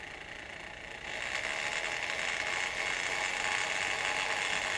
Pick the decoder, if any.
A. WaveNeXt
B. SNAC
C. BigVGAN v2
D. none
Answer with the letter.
D